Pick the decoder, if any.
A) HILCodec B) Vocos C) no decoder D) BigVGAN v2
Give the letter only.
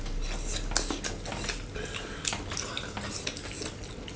C